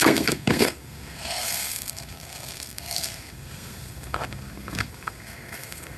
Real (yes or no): no